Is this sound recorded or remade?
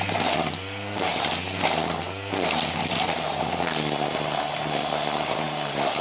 recorded